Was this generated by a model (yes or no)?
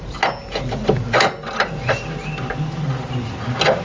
no